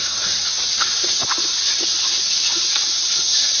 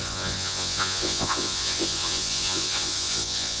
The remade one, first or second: second